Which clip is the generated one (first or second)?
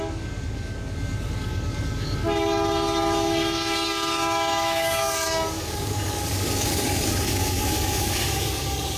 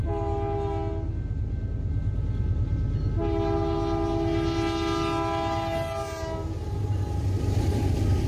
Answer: first